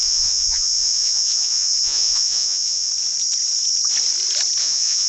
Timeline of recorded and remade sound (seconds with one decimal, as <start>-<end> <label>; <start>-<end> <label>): 0.0-2.9 remade; 2.9-4.6 recorded; 4.6-5.1 remade